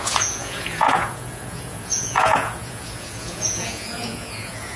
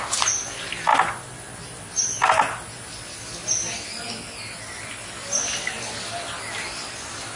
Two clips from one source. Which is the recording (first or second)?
second